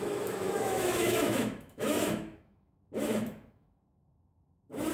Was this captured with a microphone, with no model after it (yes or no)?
no